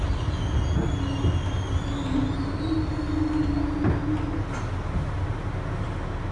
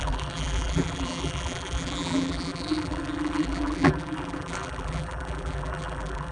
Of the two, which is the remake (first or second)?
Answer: second